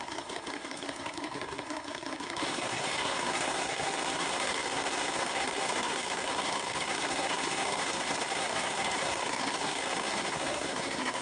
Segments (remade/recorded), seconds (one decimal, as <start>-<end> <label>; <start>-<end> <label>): 0.0-11.2 remade